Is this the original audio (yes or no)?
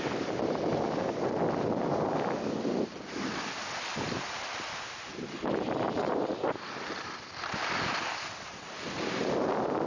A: yes